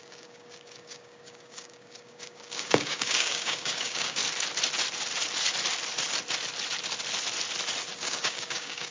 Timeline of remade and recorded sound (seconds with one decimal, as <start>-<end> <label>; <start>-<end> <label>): 0.0-4.2 remade; 4.2-7.9 recorded; 7.9-8.9 remade